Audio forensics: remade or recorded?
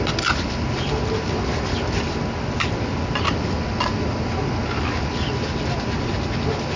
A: recorded